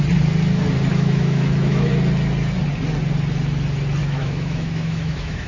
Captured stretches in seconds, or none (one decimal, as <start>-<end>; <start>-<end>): 0.0-0.9; 1.9-4.0